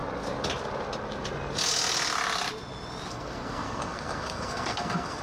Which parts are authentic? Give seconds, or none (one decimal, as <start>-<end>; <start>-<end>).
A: 0.0-3.1